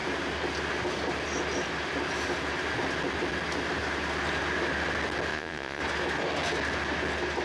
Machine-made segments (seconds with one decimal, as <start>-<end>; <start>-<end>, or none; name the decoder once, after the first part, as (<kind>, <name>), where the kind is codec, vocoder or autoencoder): 5.3-5.8 (vocoder, Vocos)